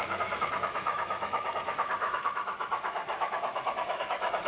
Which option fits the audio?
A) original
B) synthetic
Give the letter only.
B